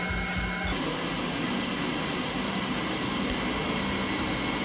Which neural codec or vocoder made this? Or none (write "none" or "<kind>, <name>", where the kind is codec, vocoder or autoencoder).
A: none